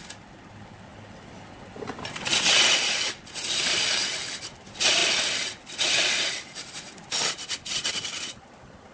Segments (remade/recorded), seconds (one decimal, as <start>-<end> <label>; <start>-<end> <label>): 0.0-8.9 recorded